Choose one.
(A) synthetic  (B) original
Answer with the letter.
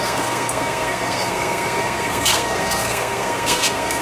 A